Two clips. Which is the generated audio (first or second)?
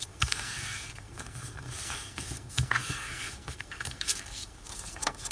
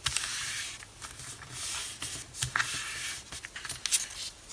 first